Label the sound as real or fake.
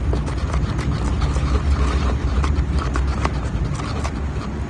real